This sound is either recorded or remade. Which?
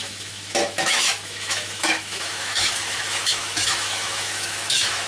remade